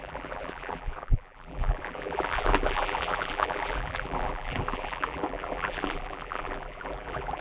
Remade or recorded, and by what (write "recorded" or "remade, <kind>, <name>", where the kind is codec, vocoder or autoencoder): remade, vocoder, BigVGAN v2